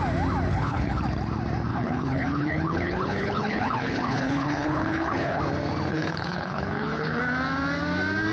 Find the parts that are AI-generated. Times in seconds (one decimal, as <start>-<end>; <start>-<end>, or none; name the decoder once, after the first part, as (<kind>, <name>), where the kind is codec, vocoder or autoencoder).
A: 0.5-1.0 (codec, HILCodec); 1.7-5.4; 5.9-7.2